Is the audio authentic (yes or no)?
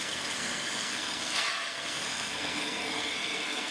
no